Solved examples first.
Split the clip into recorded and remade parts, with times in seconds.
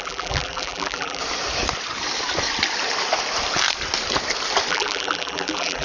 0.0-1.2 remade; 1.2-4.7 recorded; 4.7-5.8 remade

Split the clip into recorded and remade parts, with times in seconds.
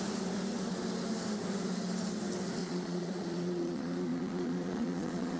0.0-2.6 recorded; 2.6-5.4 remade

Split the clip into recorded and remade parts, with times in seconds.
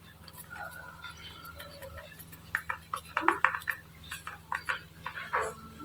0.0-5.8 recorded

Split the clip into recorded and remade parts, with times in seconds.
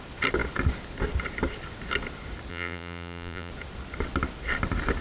0.0-2.5 recorded; 2.5-3.5 remade; 3.5-5.0 recorded